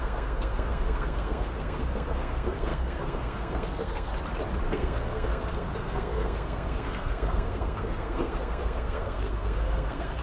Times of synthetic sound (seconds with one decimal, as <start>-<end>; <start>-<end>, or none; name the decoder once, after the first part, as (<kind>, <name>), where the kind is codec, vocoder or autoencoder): 0.0-4.1 (codec, SNAC); 4.6-10.2